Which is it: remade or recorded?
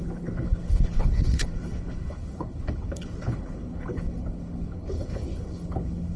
remade